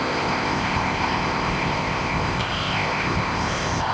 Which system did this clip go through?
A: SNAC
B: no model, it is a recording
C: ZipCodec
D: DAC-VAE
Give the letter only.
C